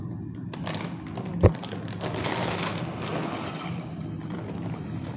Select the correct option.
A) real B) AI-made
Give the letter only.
A